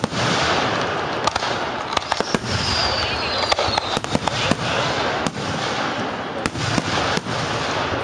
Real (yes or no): yes